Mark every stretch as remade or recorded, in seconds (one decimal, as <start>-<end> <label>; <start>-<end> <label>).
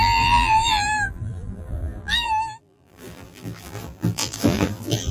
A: 0.0-5.1 remade